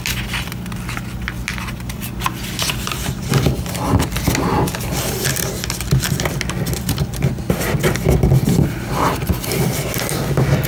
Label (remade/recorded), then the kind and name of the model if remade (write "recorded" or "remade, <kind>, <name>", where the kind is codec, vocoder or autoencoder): recorded